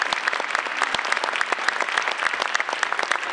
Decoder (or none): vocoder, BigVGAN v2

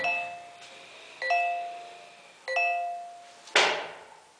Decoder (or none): none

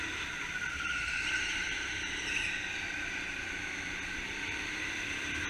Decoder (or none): vocoder, BigVGAN v2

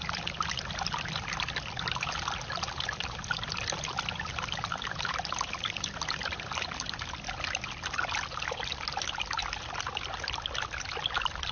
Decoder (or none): none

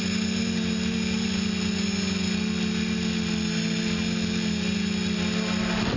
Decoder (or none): none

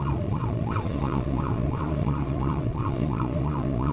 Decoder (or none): vocoder, Vocos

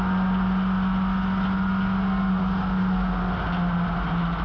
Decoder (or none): none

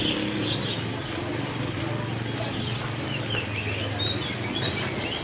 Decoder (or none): none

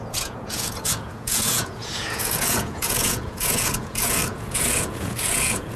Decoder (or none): vocoder, Vocos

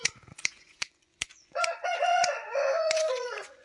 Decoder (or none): vocoder, Vocos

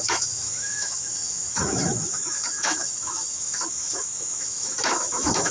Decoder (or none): autoencoder, DAC-VAE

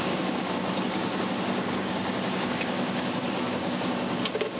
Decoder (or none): codec, DAC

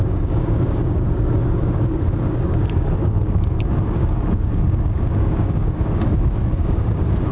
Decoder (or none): codec, DAC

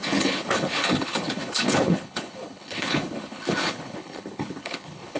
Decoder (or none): codec, HILCodec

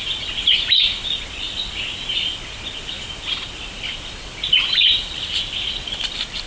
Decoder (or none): none